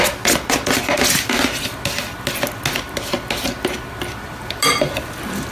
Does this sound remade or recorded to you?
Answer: recorded